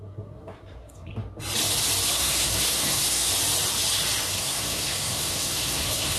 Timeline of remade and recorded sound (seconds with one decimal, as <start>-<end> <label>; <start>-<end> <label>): 0.0-1.1 remade; 1.1-2.1 recorded; 2.1-3.3 remade; 3.3-4.3 recorded; 4.3-6.2 remade